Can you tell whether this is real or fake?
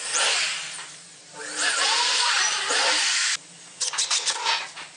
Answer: real